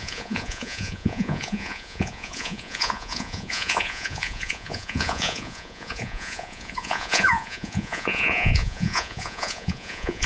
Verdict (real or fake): fake